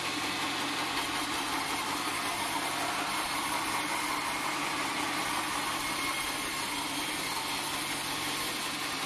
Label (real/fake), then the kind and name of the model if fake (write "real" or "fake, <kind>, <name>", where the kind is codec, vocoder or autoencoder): real